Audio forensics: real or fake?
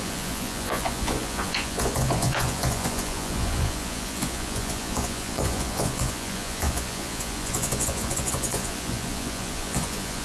fake